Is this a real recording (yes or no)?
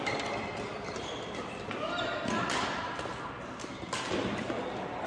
yes